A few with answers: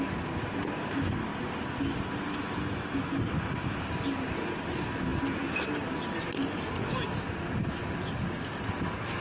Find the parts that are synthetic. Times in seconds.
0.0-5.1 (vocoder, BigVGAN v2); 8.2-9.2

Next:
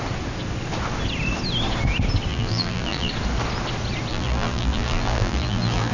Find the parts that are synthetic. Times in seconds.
2.3-3.1 (vocoder, BigVGAN v2); 4.1-5.9

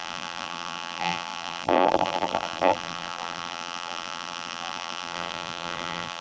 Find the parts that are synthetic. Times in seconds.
0.0-6.2 (vocoder, BigVGAN v2)

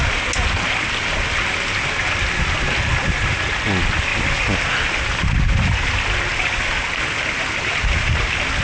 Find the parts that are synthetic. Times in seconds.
4.1-4.7 (vocoder, BigVGAN v2); 6.3-8.1

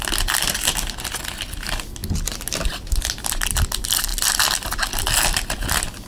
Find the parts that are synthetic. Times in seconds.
none

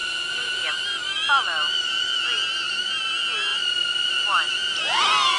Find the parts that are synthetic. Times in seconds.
0.0-0.7 (vocoder, BigVGAN v2); 3.5-4.2